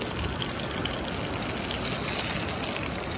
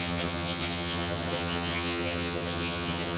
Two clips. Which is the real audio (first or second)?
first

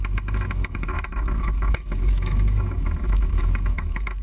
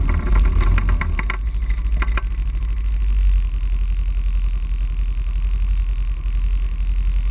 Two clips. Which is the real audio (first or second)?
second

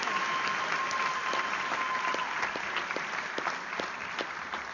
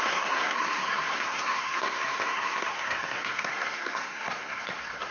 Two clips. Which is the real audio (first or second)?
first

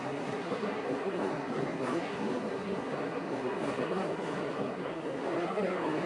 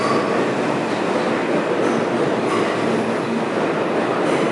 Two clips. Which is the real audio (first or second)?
second